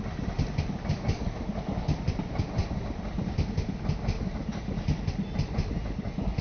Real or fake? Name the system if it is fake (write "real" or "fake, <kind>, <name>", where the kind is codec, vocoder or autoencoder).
real